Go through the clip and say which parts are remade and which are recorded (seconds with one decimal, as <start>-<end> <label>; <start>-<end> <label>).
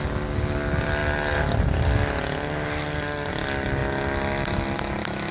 0.0-5.3 recorded